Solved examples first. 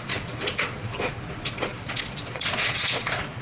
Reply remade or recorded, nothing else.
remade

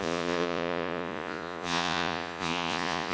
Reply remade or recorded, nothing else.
remade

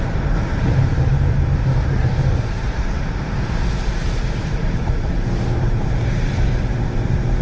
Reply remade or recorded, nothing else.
remade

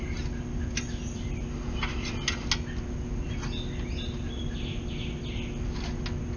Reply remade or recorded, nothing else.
recorded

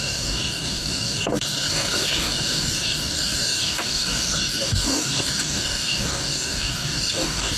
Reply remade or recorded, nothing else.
remade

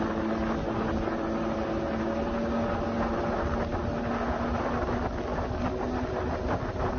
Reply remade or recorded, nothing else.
recorded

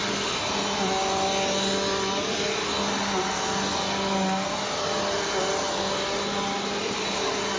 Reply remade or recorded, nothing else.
recorded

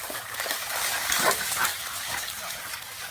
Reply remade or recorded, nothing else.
remade